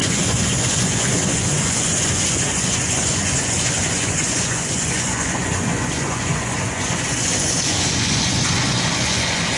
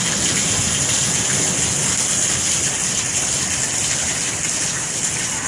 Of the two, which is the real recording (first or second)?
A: second